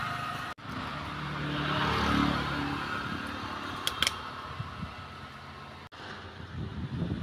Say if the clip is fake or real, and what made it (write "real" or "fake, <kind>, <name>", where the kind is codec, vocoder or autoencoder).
real